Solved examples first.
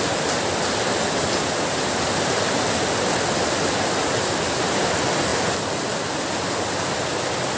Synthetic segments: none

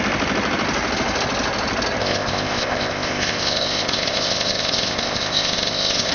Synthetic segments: 2.0-6.1 (codec, ZipCodec)

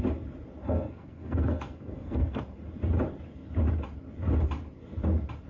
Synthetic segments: 0.6-2.4 (codec, SNAC)

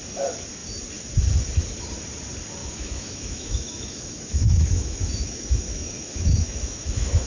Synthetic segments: 2.6-7.3 (autoencoder, DAC-VAE)

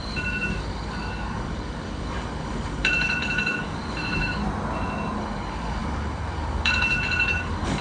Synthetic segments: 0.0-4.4 (codec, DAC); 5.2-7.8

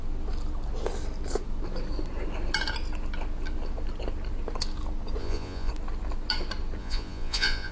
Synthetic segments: 5.2-5.7 (vocoder, Vocos); 6.8-7.7